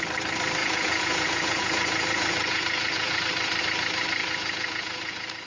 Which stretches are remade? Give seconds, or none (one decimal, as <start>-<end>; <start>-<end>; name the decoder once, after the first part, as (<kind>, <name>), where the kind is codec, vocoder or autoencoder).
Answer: 0.6-3.2 (vocoder, Vocos); 4.2-5.5